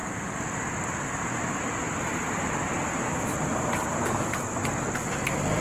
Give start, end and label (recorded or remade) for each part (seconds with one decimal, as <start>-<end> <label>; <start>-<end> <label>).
0.0-3.4 remade; 3.4-5.6 recorded